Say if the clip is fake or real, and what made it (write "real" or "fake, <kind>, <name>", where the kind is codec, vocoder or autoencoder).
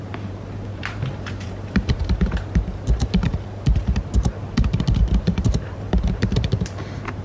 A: fake, vocoder, BigVGAN v2